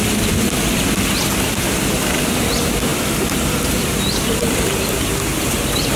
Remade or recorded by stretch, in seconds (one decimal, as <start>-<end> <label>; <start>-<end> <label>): 0.0-6.0 recorded